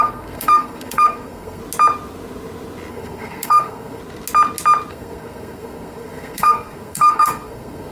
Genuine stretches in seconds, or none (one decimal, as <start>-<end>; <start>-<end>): 1.6-2.9; 4.0-4.9